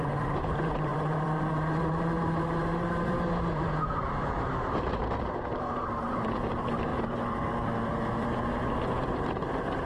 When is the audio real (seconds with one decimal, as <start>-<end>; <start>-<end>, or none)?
6.9-9.3